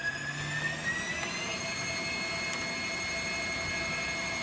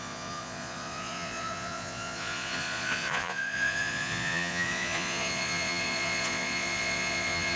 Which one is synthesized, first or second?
second